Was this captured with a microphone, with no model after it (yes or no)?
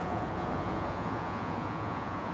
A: no